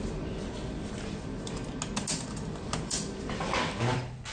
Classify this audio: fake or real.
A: real